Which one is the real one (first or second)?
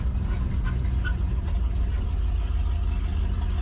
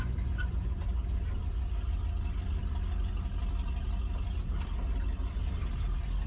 first